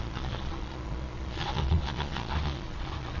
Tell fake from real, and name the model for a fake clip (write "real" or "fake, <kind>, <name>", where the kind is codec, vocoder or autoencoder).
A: fake, vocoder, Vocos